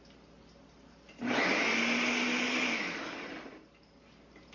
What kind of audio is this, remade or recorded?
recorded